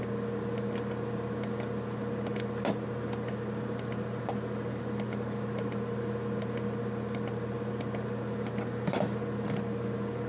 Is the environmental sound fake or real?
real